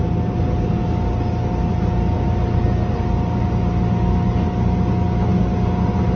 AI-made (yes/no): no